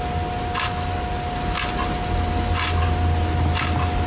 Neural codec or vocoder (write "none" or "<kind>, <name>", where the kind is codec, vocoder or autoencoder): none